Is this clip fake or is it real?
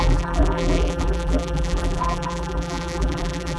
fake